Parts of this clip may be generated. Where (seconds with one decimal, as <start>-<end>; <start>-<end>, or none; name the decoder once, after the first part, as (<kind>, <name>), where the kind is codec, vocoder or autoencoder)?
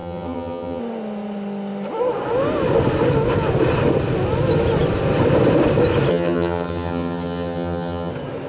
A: 0.0-0.8 (vocoder, HiFi-GAN); 6.1-8.1